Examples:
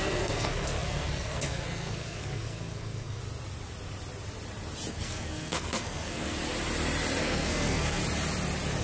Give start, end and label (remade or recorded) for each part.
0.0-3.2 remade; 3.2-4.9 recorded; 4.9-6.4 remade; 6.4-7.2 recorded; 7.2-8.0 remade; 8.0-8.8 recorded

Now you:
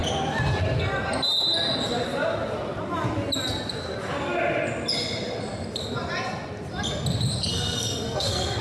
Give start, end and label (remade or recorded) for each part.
0.0-7.5 recorded; 7.5-8.6 remade

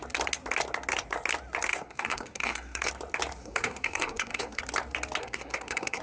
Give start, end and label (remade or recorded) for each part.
0.0-1.7 recorded; 1.7-2.9 remade; 2.9-3.4 recorded; 3.4-4.6 remade; 4.6-5.2 recorded; 5.2-6.0 remade

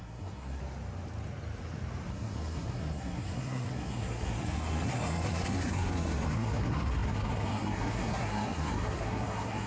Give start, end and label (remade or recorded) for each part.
0.0-0.6 remade; 0.6-2.1 recorded; 2.1-9.7 remade

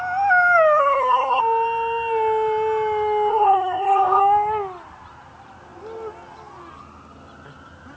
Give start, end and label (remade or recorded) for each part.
0.0-0.8 recorded; 0.8-1.4 remade; 1.4-3.3 recorded; 3.3-4.2 remade; 4.2-8.0 recorded

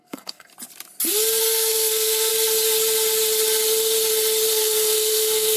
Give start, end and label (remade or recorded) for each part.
0.0-0.5 remade; 0.5-1.4 recorded; 1.4-2.3 remade; 2.3-4.5 recorded; 4.5-5.6 remade

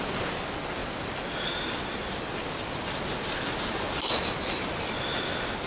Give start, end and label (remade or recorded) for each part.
0.0-5.7 recorded

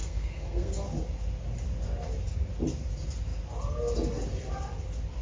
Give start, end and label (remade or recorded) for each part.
0.0-0.7 remade; 0.7-5.2 recorded